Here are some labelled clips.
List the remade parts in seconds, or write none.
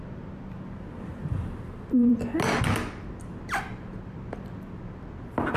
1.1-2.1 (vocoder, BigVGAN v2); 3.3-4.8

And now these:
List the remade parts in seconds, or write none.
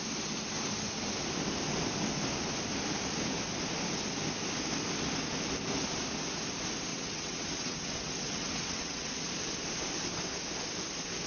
6.9-9.1 (vocoder, WaveNeXt)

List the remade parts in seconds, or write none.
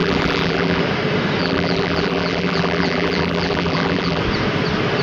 0.0-0.8 (vocoder, BigVGAN v2); 1.4-4.2